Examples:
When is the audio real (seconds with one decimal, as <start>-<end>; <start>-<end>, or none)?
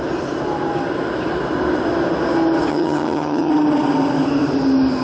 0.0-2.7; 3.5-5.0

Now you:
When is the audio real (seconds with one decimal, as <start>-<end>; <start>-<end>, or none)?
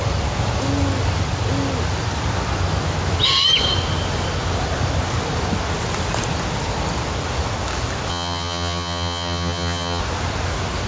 0.0-8.1; 10.0-10.9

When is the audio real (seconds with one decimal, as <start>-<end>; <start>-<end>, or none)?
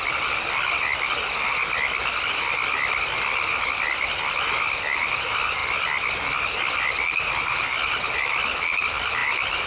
0.0-9.2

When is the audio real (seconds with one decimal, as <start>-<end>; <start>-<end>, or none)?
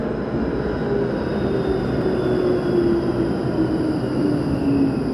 0.0-5.1